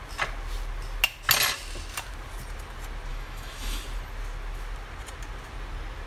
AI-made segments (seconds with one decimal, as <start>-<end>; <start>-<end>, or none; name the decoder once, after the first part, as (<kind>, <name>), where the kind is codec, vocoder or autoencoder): 3.1-3.8 (autoencoder, DAC-VAE)